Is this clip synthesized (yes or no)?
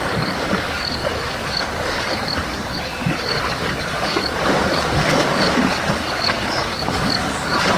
yes